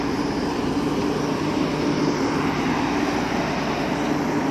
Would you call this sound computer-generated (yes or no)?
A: no